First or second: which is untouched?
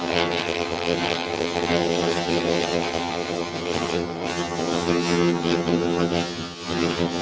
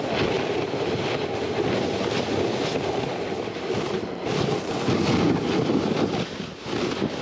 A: second